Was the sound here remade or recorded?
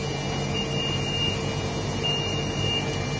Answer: recorded